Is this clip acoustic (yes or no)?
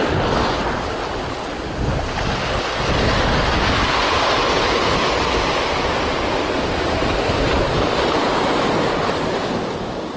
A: yes